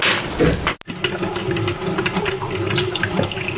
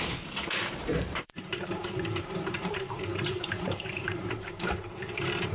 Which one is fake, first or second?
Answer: second